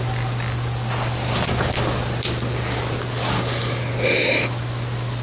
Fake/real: real